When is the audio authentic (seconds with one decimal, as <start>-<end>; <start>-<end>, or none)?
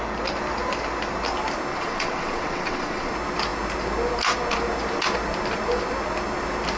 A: 0.0-1.7; 3.1-6.8